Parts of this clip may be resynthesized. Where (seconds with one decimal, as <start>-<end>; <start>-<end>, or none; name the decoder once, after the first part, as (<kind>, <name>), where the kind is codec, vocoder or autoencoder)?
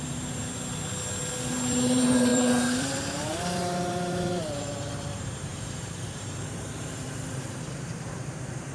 0.0-0.4 (vocoder, BigVGAN v2); 1.5-8.7